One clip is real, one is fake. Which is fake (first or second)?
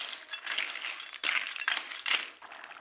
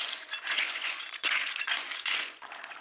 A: second